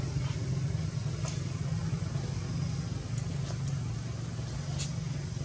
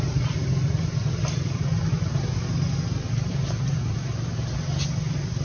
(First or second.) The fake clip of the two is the second